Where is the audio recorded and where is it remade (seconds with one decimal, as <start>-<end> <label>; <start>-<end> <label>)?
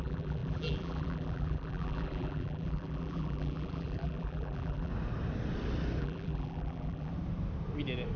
0.0-4.9 remade; 4.9-6.0 recorded; 6.0-7.1 remade; 7.1-8.2 recorded